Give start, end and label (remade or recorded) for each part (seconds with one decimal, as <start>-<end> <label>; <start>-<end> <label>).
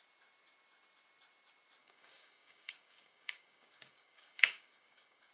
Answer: 0.0-1.8 recorded; 1.8-5.3 remade